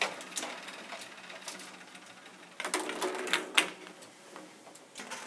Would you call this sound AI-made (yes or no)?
no